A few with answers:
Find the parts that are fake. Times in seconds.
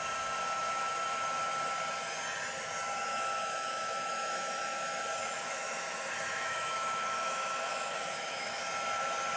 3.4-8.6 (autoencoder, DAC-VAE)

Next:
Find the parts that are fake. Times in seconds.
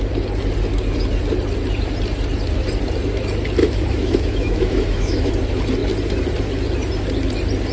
3.6-5.3 (autoencoder, DAC-VAE)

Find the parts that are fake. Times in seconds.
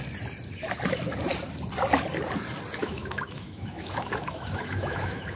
2.8-5.4 (autoencoder, DAC-VAE)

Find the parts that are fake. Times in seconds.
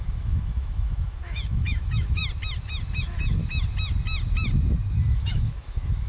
0.0-2.2 (autoencoder, DAC-VAE); 3.0-3.4; 5.1-6.1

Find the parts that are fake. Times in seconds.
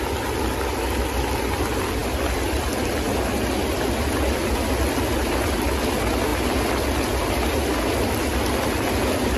none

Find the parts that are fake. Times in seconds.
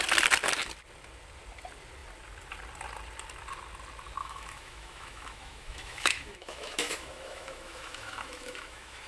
4.2-9.1 (autoencoder, DAC-VAE)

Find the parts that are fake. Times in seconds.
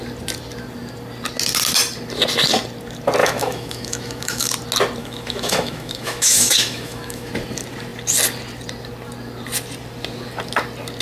3.2-4.5 (autoencoder, DAC-VAE); 5.0-7.3